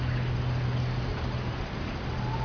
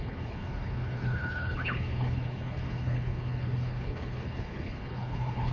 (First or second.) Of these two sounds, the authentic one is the first